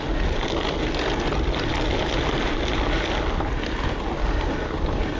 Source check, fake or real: real